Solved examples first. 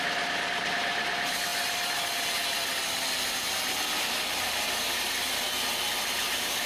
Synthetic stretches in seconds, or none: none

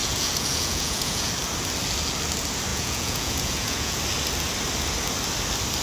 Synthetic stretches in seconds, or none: 0.0-1.3; 2.7-4.0

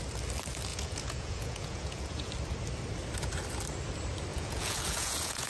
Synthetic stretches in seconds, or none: 0.7-2.3; 4.3-5.5

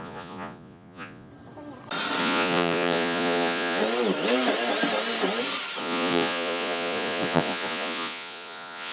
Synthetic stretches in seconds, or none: 0.0-1.3; 2.2-3.8; 5.8-8.9

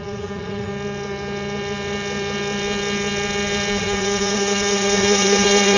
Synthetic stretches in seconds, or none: 0.0-0.7; 3.7-5.8

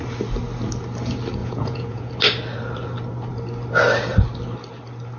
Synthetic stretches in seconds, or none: 1.4-2.1